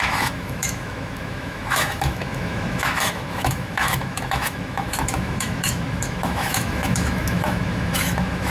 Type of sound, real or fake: fake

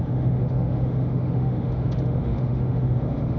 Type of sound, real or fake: fake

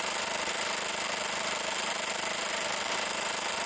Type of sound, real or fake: fake